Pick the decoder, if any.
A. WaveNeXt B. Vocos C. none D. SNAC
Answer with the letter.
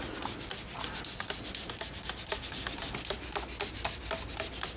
C